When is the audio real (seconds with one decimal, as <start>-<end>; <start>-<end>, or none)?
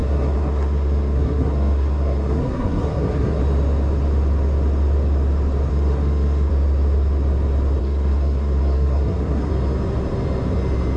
3.4-5.7; 6.5-7.8; 9.5-11.0